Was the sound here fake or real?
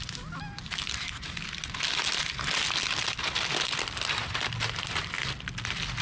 real